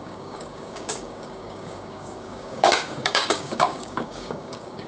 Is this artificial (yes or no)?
yes